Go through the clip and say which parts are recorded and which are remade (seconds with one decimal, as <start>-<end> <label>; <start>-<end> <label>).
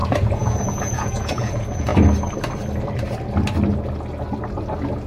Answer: 0.0-1.9 remade; 1.9-5.1 recorded